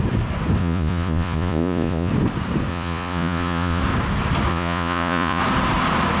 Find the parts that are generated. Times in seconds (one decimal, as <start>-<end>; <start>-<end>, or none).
0.6-2.1; 2.7-3.8; 4.5-5.4